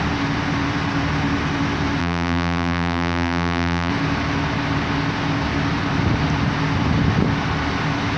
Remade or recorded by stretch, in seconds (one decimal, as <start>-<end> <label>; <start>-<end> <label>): 0.0-2.0 recorded; 2.0-3.9 remade; 3.9-8.2 recorded

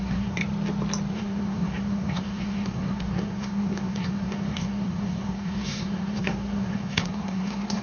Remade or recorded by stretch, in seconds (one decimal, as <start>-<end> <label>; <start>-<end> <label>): 0.0-0.4 remade; 0.4-1.1 recorded; 1.1-7.8 remade